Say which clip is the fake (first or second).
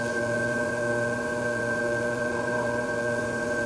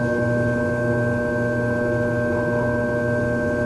first